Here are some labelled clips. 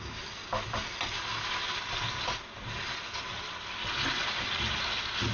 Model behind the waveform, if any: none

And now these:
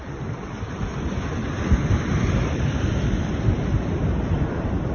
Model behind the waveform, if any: none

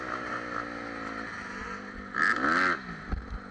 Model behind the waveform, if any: none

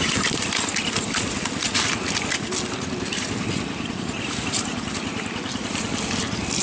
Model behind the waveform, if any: none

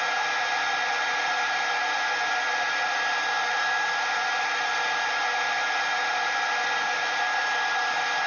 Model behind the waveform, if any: none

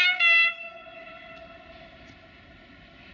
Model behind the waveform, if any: none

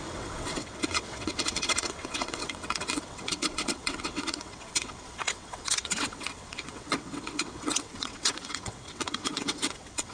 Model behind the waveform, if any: vocoder, WaveNeXt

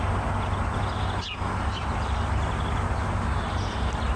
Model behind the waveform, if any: none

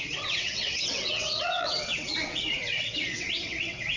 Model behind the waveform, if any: vocoder, WaveNeXt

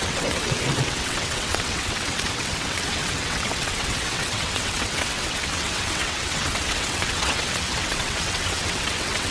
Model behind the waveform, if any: vocoder, WaveNeXt